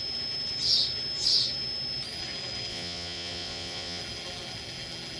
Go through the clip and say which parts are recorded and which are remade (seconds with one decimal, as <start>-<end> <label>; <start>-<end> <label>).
0.0-2.7 recorded; 2.7-4.0 remade; 4.0-5.2 recorded